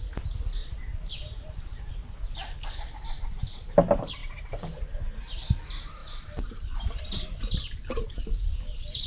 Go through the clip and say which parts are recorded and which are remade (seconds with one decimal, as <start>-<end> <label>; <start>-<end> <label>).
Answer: 0.0-0.6 recorded; 0.6-1.9 remade; 1.9-6.0 recorded; 6.0-9.1 remade